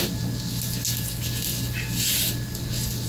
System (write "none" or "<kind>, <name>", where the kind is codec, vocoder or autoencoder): none